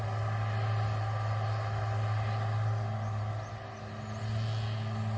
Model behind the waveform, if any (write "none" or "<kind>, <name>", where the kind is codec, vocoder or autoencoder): none